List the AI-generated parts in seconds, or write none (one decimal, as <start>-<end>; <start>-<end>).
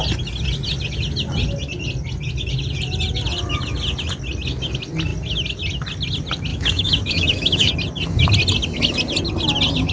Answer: 6.5-7.7